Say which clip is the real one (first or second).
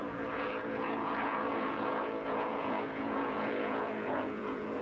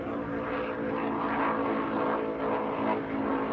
second